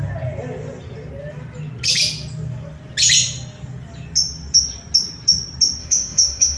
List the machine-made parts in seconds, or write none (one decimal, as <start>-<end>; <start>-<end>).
5.8-6.6